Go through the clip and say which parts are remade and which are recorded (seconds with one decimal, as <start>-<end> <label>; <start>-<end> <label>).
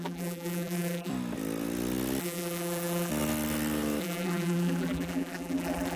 0.0-1.1 remade; 1.1-2.2 recorded; 2.2-3.1 remade; 3.1-4.0 recorded; 4.0-6.0 remade